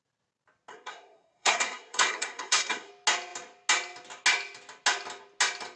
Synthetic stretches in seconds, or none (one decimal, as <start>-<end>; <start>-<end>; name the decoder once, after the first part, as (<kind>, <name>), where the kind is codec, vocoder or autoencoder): 0.7-2.9 (codec, SNAC)